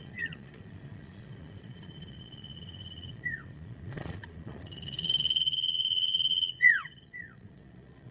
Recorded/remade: remade